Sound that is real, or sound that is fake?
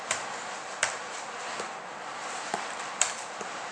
fake